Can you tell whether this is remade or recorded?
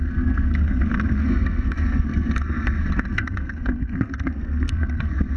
remade